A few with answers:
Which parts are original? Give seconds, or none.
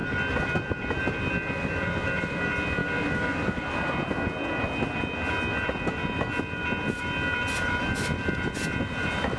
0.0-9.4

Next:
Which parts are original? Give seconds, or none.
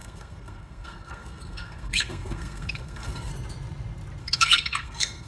3.3-4.2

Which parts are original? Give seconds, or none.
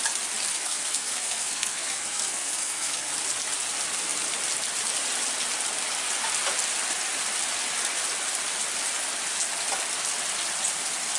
0.0-0.5; 3.1-11.2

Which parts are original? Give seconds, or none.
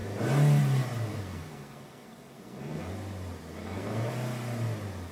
0.0-1.1; 2.9-3.6; 4.1-5.1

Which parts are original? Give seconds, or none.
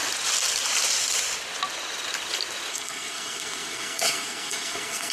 0.0-2.7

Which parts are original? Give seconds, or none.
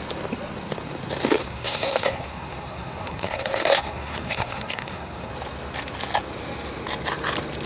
0.0-1.4; 5.3-7.7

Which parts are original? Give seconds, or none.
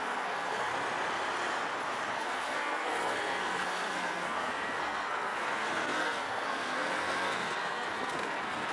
0.7-2.1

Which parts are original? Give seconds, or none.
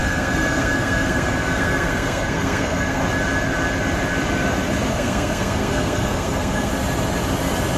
3.0-4.9; 6.7-7.8